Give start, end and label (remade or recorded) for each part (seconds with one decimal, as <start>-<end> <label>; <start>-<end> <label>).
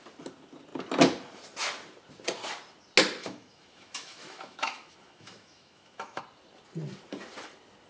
0.0-3.2 recorded; 3.2-6.2 remade; 6.2-7.9 recorded